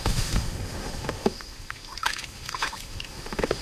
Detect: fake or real fake